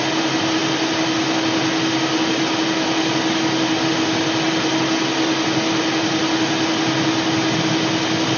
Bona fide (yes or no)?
yes